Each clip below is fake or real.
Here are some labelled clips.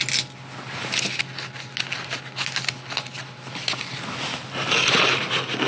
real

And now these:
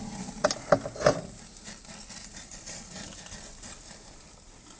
real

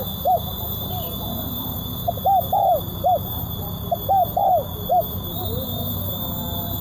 real